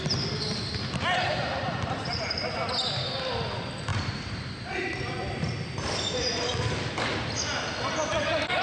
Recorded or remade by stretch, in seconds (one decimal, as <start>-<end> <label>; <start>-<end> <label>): 0.0-3.9 recorded; 3.9-5.1 remade; 5.1-8.6 recorded